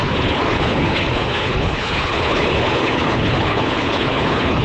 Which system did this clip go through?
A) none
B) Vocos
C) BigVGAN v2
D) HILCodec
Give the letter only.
D